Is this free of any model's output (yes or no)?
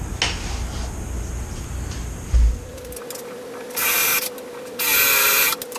yes